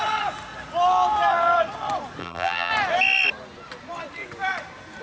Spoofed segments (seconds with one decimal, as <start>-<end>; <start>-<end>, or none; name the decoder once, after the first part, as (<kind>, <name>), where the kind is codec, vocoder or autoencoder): 2.2-2.7 (vocoder, BigVGAN v2)

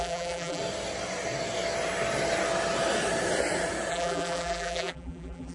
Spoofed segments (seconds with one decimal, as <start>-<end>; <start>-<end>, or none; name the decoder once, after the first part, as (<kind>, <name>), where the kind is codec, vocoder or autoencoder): 0.0-0.6 (vocoder, BigVGAN v2); 3.9-5.5

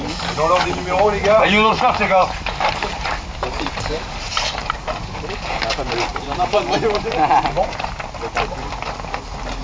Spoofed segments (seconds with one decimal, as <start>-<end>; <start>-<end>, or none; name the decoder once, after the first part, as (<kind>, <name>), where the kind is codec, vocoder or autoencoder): 1.2-4.8 (vocoder, BigVGAN v2); 6.1-8.0

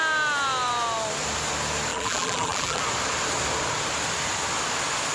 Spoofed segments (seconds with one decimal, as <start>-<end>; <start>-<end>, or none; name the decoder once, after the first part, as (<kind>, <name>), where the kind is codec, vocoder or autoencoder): 1.9-2.8 (vocoder, BigVGAN v2)

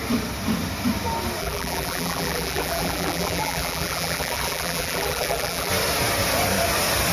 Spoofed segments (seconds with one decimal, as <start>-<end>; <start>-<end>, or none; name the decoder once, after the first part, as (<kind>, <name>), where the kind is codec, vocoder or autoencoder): 1.4-5.7 (vocoder, BigVGAN v2)